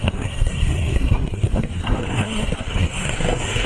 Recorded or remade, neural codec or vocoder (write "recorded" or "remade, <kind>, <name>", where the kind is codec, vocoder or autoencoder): remade, codec, SNAC